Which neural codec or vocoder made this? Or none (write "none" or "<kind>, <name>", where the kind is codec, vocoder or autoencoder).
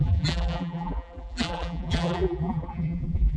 vocoder, BigVGAN v2